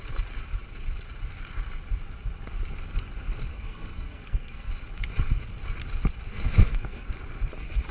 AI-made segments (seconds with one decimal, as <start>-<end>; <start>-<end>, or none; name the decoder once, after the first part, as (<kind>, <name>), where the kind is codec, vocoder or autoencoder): 3.5-4.7 (codec, SNAC); 6.3-7.1